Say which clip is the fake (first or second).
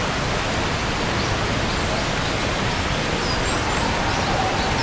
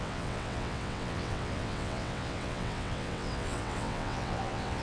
second